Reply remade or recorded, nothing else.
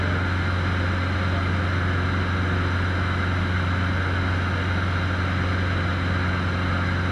recorded